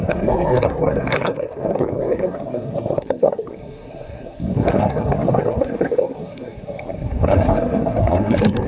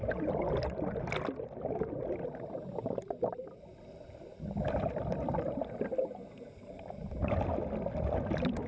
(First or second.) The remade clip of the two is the first